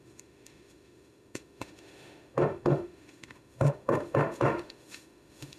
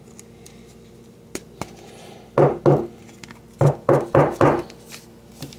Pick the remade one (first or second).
first